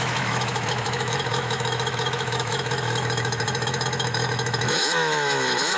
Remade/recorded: remade